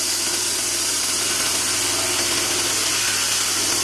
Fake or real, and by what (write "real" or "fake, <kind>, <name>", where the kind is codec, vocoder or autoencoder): real